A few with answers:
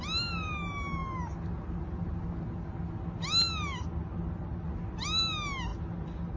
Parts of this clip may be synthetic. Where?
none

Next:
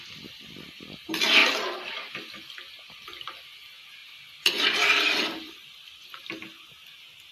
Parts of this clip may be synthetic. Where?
1.4-2.1 (vocoder, BigVGAN v2); 4.0-5.5

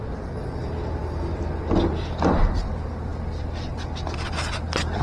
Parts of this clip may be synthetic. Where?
none

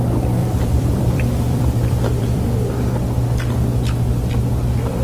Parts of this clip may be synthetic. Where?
0.4-2.5 (vocoder, BigVGAN v2)

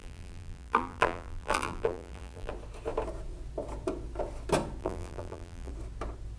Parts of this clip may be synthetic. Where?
0.0-2.5 (vocoder, BigVGAN v2); 4.8-5.7

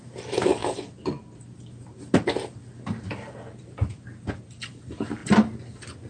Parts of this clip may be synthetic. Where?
none